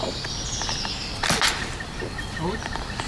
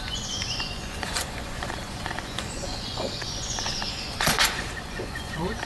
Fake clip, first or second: second